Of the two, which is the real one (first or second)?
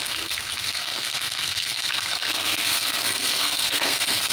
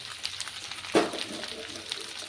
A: second